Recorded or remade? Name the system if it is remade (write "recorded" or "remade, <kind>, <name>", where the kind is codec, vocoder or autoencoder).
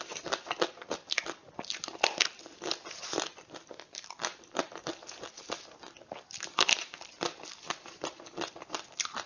remade, vocoder, BigVGAN v2